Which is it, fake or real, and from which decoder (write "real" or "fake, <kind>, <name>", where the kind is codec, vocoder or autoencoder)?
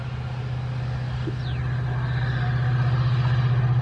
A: real